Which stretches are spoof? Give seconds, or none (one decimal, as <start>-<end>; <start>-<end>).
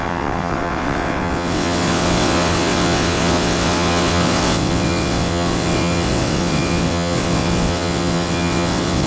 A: 0.0-9.1